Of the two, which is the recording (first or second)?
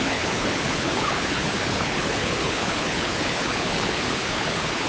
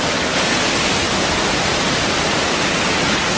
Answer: second